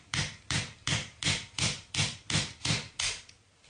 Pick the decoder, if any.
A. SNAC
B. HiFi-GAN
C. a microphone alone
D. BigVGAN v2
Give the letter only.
D